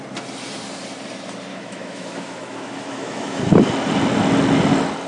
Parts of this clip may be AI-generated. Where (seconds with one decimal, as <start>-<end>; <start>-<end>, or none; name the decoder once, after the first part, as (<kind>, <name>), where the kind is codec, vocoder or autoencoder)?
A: 1.5-3.4 (autoencoder, DAC-VAE)